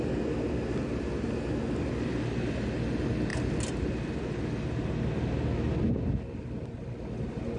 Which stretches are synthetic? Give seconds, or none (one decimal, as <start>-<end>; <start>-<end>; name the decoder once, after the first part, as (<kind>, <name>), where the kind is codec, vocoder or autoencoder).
none